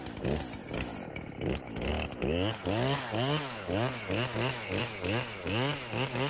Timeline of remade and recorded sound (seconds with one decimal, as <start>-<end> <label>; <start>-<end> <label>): 0.0-6.3 recorded